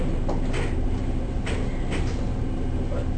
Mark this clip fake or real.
real